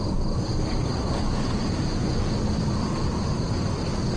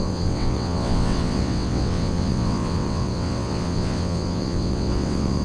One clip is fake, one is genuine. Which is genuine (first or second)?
first